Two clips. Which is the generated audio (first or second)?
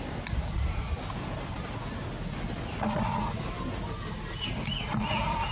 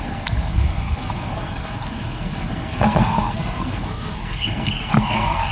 second